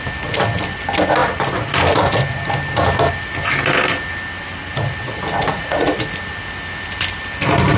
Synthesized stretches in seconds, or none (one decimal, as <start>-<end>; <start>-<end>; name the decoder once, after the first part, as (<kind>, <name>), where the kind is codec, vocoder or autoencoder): 5.4-5.9 (vocoder, Vocos)